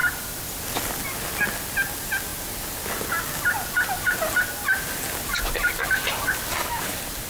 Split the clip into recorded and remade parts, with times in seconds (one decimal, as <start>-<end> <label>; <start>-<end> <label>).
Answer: 0.0-0.8 remade; 0.8-2.3 recorded; 2.3-2.9 remade; 2.9-7.3 recorded